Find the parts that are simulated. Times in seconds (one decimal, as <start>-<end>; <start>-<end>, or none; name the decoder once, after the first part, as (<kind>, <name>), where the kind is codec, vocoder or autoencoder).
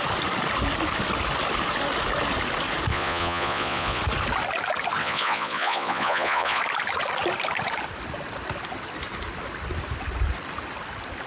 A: 2.9-4.0 (vocoder, Vocos); 5.0-6.6